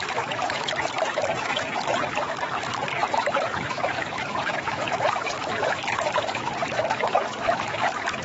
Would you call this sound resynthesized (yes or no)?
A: yes